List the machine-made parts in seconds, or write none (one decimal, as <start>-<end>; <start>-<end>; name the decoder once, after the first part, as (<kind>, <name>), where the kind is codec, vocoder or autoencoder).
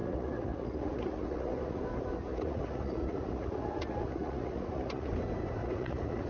0.0-1.8 (vocoder, Vocos); 2.3-5.1; 5.6-6.3